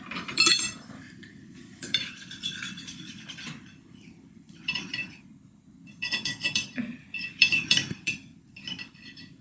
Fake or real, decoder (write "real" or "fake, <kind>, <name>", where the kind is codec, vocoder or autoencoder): fake, vocoder, BigVGAN v2